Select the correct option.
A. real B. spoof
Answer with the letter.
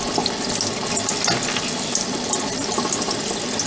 A